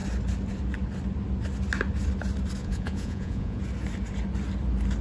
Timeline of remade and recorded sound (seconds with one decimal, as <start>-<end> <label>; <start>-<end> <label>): 0.0-2.6 recorded; 2.6-3.6 remade; 3.6-5.0 recorded